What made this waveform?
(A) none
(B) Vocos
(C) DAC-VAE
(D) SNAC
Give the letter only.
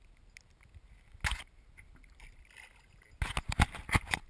A